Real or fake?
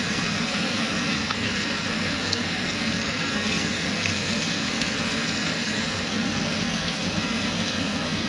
fake